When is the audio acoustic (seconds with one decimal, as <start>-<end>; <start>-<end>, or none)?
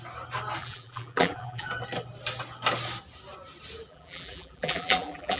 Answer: 0.0-0.6; 1.7-3.9